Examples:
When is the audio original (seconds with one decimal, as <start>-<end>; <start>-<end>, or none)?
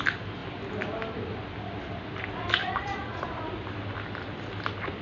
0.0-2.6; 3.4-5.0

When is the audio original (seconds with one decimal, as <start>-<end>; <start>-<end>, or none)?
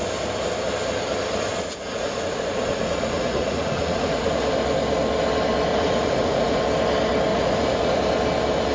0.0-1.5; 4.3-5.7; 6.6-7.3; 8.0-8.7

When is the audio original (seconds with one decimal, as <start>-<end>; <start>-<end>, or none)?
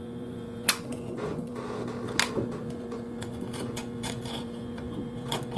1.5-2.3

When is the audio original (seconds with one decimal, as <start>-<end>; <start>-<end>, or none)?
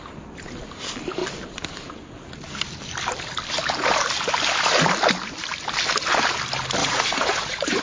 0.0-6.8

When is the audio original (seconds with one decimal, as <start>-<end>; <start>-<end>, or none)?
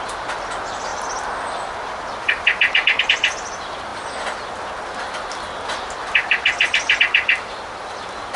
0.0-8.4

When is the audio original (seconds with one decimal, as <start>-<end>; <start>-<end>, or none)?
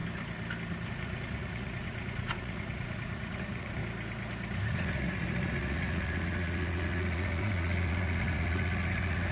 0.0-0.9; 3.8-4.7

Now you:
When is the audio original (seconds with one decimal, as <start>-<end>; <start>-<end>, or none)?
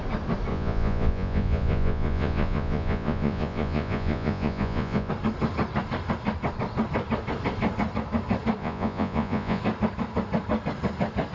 0.0-0.5; 5.1-8.6; 9.6-11.3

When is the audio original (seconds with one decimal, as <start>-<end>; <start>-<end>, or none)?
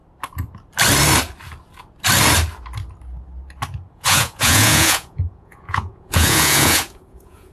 0.0-3.9